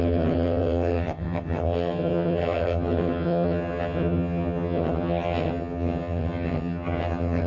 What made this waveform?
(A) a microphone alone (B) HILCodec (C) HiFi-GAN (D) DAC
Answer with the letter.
C